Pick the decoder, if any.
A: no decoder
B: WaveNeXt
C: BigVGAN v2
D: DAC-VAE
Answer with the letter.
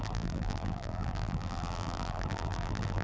C